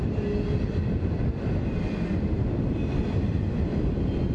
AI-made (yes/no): no